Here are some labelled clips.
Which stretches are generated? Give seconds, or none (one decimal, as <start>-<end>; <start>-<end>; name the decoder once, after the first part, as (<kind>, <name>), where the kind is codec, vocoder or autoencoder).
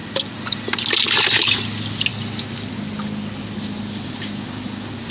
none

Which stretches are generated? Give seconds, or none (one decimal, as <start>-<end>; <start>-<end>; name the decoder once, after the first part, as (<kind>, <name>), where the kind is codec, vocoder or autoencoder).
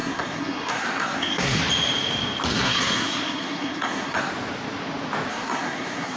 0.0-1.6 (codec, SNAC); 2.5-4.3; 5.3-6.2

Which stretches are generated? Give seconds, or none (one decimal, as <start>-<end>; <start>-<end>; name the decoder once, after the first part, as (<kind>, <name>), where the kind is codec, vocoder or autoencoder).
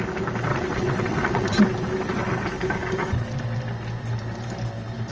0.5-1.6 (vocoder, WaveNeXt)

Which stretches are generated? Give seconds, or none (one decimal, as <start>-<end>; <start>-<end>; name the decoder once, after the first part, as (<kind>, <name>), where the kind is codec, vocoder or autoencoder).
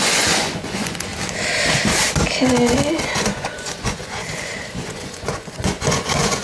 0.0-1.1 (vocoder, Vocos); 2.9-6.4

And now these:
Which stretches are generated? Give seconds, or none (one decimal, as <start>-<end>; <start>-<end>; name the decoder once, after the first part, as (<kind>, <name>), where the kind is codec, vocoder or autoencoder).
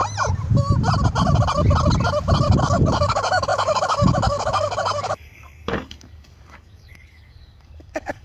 2.6-8.2 (codec, DAC)